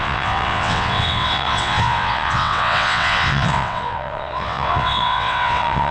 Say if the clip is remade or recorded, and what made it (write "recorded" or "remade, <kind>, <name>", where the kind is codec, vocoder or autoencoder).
remade, vocoder, WaveNeXt